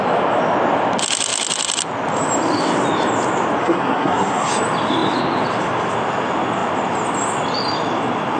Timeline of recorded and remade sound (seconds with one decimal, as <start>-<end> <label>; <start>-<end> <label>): 0.0-3.6 recorded; 3.6-4.5 remade; 4.5-8.4 recorded